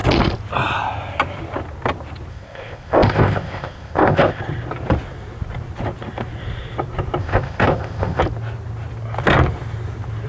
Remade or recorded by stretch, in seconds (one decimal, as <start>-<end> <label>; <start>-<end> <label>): 0.0-2.3 recorded; 2.3-4.4 remade; 4.4-7.2 recorded; 7.2-8.2 remade; 8.2-10.3 recorded